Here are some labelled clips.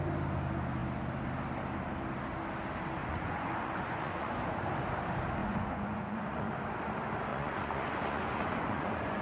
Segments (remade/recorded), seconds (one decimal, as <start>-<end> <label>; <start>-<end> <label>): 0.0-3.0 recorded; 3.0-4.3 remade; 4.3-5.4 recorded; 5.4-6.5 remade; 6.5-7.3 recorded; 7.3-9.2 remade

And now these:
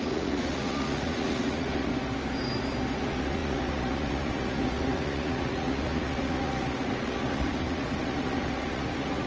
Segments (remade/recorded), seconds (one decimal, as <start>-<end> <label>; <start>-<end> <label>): 0.0-1.9 remade; 1.9-3.0 recorded; 3.0-9.3 remade

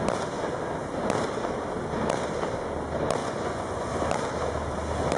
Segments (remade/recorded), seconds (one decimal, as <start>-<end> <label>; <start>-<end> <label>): 0.0-3.2 recorded; 3.2-3.9 remade; 3.9-5.2 recorded

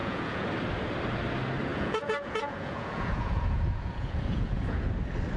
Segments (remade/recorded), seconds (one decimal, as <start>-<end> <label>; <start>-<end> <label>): 0.0-0.5 remade; 0.5-1.7 recorded; 1.7-4.9 remade; 4.9-5.4 recorded

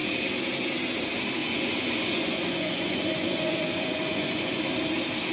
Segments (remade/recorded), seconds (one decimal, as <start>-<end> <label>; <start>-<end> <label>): 0.0-1.4 recorded; 1.4-4.6 remade; 4.6-5.3 recorded